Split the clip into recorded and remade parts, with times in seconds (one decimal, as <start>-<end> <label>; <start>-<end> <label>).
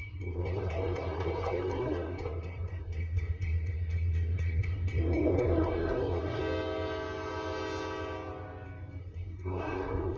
0.0-6.4 remade; 6.4-9.0 recorded; 9.0-10.2 remade